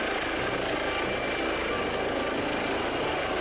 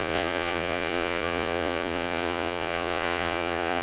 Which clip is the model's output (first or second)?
second